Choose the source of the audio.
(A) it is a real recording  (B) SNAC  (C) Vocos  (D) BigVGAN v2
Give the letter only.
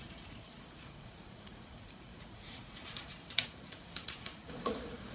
C